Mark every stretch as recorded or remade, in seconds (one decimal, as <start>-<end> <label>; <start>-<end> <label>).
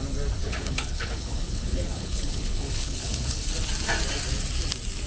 0.0-0.4 recorded; 0.4-3.5 remade; 3.5-5.1 recorded